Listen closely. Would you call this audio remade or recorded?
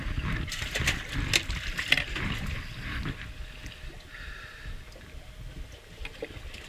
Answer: recorded